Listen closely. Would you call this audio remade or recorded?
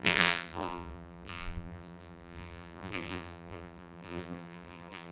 remade